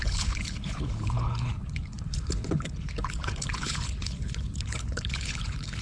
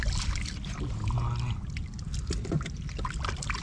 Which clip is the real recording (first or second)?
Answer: second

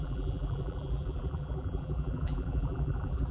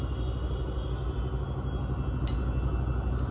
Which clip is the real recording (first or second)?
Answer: second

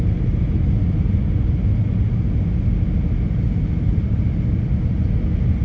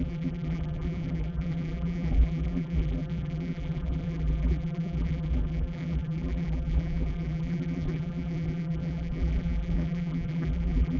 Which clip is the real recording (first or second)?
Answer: first